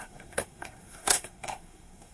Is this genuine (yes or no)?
no